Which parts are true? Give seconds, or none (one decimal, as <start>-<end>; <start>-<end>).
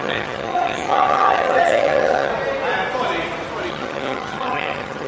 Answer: 2.3-3.7